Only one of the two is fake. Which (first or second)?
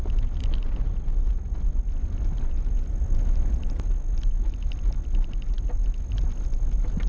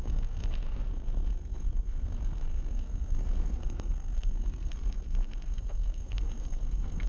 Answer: second